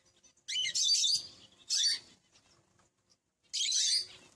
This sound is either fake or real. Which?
real